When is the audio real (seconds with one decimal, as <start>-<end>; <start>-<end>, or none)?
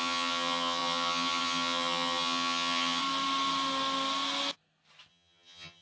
3.0-5.1